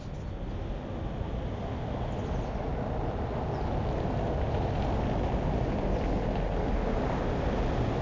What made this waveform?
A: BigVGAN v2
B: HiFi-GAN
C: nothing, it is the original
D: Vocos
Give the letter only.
C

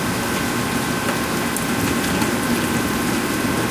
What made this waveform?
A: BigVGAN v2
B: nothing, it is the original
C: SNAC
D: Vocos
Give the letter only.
B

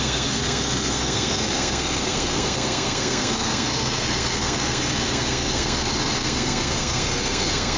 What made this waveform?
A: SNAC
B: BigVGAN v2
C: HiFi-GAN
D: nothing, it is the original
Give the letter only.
A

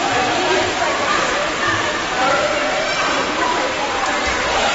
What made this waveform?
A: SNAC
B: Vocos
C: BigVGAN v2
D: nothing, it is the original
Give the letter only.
C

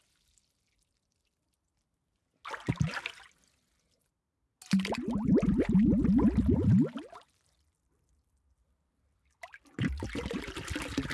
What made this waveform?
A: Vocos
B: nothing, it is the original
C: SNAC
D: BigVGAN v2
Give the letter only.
B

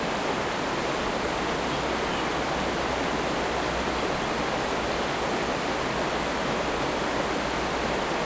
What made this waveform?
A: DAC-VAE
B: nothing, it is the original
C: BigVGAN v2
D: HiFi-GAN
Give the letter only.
B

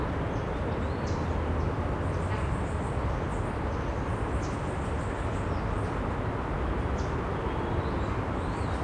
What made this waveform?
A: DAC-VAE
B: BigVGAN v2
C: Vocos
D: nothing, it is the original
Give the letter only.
D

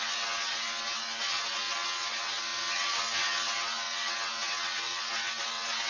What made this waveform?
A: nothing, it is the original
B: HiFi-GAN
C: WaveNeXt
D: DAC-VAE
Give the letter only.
C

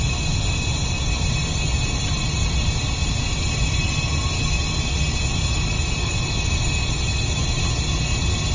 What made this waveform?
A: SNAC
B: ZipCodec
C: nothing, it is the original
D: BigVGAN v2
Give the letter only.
C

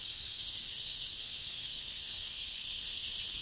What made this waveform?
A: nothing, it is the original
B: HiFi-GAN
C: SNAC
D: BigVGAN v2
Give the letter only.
C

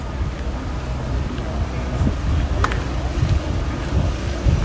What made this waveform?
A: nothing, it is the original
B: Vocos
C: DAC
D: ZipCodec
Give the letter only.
A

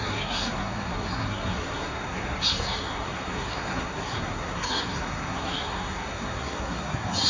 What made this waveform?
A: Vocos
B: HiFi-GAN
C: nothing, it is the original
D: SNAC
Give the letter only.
D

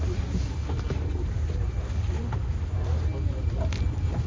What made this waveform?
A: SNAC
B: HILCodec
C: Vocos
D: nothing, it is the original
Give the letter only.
D